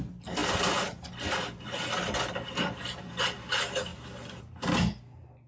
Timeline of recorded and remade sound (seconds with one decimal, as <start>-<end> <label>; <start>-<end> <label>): 0.0-5.5 recorded